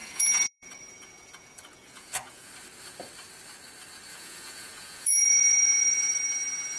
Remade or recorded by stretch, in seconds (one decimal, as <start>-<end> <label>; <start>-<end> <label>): 0.0-2.5 remade; 2.5-4.1 recorded; 4.1-6.2 remade; 6.2-6.8 recorded